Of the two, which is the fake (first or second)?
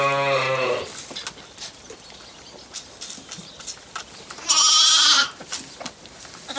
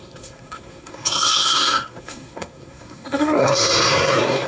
second